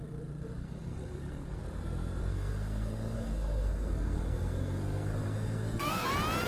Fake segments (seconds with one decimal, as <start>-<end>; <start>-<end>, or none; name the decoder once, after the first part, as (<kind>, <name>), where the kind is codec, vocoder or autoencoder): 0.6-1.6 (codec, SNAC); 2.2-6.1